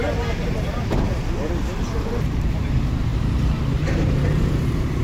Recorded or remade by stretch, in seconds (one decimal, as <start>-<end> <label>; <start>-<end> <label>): 0.0-5.0 remade